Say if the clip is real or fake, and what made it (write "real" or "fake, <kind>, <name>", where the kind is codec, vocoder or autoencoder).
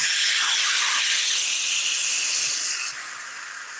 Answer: real